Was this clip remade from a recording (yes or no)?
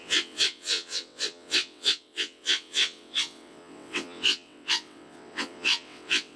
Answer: yes